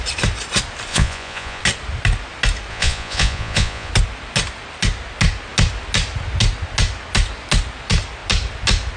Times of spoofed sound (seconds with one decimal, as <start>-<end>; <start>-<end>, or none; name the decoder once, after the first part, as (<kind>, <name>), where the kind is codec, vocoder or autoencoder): 0.9-1.6 (vocoder, Vocos); 2.7-3.9